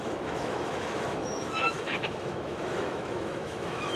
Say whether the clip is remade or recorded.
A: remade